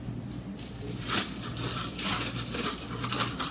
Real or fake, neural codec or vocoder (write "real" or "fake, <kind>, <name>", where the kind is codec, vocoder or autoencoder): fake, vocoder, BigVGAN v2